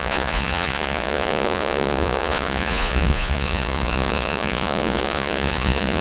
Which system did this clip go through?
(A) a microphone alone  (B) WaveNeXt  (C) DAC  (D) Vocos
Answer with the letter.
D